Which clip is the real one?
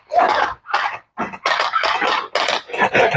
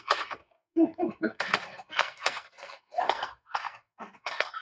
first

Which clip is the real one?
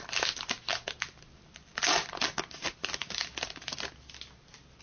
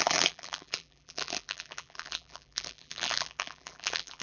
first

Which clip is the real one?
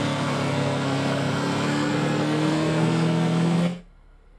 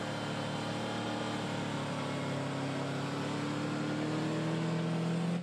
second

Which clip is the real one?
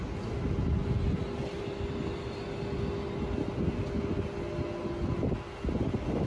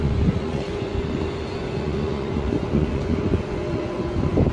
first